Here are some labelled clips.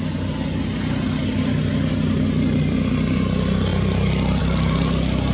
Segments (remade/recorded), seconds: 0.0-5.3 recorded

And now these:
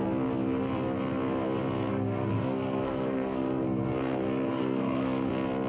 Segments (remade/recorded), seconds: 0.0-1.9 recorded; 1.9-5.3 remade; 5.3-5.7 recorded

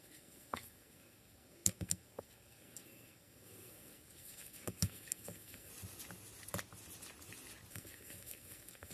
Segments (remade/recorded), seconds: 0.0-5.7 remade; 5.7-7.7 recorded; 7.7-8.9 remade

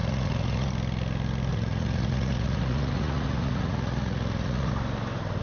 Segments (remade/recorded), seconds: 0.0-0.7 remade; 0.7-1.5 recorded; 1.5-4.7 remade; 4.7-5.4 recorded

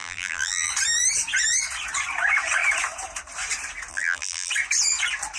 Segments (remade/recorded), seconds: 0.0-0.7 remade; 0.7-3.9 recorded; 3.9-4.5 remade; 4.5-5.4 recorded